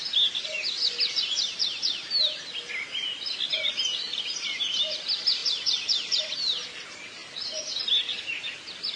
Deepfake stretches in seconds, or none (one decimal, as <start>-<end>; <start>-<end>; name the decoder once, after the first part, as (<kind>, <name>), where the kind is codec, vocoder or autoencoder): 1.7-2.4 (vocoder, BigVGAN v2); 3.5-4.1